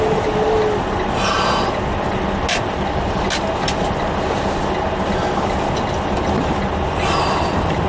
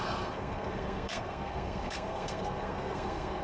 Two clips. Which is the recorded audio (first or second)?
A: first